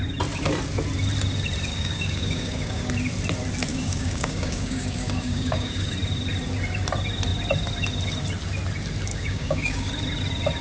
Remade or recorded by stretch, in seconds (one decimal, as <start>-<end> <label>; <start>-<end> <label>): 0.0-1.7 recorded; 1.7-2.9 remade; 2.9-3.7 recorded; 3.7-5.9 remade; 5.9-9.1 recorded; 9.1-9.9 remade; 9.9-10.6 recorded